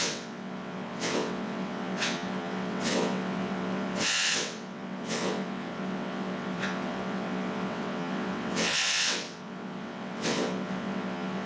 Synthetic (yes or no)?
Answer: yes